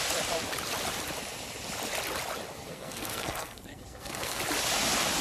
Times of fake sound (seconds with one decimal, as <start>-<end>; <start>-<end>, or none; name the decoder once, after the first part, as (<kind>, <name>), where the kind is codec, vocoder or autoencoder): 2.5-4.4 (codec, SNAC)